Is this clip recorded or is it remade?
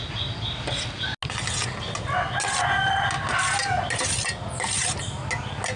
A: recorded